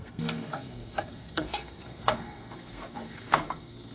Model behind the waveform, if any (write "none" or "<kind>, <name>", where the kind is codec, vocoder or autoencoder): codec, SNAC